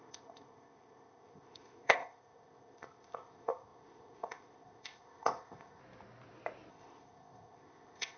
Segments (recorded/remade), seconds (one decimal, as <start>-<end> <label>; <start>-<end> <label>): 0.0-5.8 remade; 5.8-6.7 recorded; 6.7-8.2 remade